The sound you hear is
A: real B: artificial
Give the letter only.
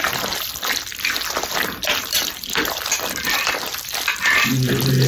A